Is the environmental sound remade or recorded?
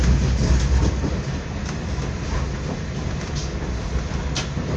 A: recorded